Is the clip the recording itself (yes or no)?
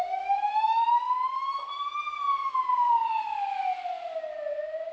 yes